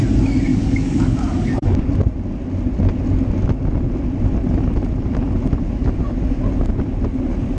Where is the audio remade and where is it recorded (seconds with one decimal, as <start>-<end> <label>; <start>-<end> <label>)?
0.0-0.5 recorded; 0.5-1.9 remade; 1.9-7.6 recorded